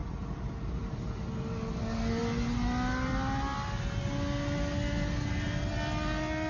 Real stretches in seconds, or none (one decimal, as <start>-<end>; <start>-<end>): 0.0-6.5